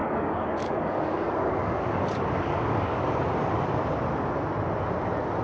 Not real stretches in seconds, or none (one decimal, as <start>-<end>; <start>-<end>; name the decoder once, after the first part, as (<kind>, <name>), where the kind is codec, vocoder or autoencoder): 0.0-3.2 (codec, DAC)